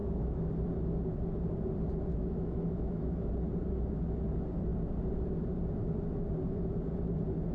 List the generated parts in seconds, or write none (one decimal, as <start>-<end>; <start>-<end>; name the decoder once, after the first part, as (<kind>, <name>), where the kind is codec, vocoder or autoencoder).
0.0-0.5 (autoencoder, DAC-VAE); 2.1-3.3